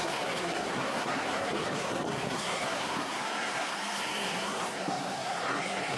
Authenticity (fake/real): fake